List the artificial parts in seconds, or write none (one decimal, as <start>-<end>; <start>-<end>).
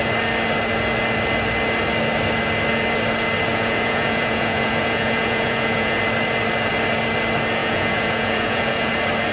3.5-6.0; 7.6-8.9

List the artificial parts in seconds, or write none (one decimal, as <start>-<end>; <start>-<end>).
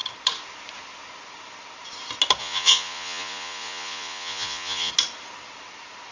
2.4-4.9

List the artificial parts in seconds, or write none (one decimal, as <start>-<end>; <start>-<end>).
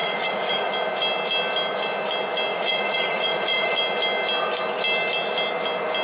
0.0-0.7; 2.5-3.8